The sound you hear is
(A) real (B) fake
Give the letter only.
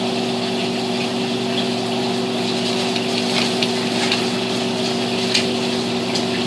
A